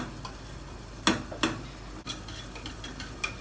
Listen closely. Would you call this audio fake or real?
real